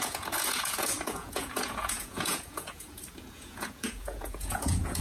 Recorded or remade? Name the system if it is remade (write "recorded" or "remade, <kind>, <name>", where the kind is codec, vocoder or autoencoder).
remade, vocoder, Vocos